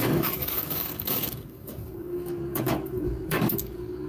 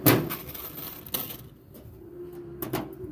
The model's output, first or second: first